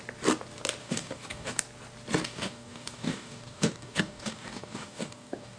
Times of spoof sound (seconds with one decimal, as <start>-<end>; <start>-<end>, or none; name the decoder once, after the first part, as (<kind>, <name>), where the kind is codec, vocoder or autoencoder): 0.8-1.6 (codec, DAC); 2.2-5.6